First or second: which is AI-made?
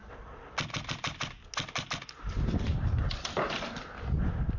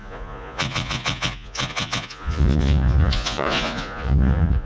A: second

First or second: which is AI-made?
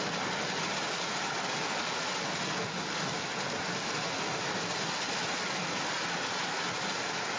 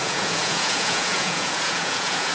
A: second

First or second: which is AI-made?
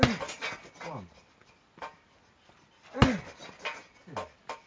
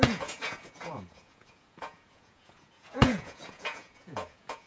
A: second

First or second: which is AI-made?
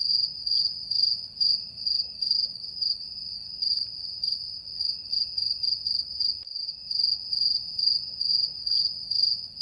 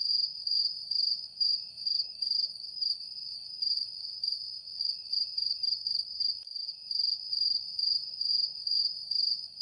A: second